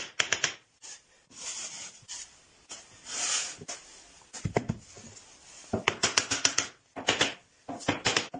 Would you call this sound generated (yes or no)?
no